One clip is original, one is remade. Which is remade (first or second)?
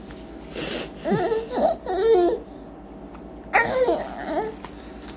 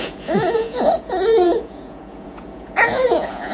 second